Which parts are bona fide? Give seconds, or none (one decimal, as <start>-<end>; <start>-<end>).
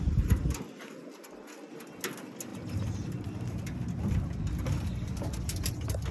0.0-6.1